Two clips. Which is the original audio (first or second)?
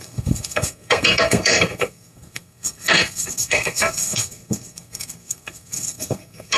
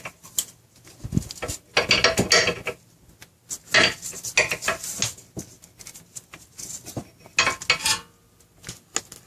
second